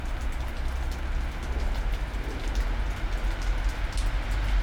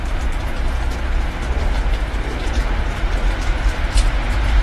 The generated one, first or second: second